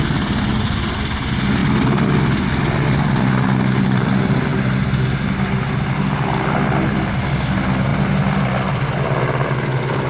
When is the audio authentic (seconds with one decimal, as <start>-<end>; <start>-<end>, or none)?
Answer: 0.0-10.1